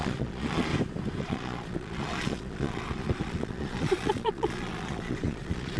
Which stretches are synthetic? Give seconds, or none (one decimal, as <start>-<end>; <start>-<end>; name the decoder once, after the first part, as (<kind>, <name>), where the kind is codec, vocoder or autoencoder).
0.0-0.7 (vocoder, Vocos); 1.2-5.8